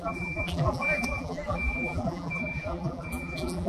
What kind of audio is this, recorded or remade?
remade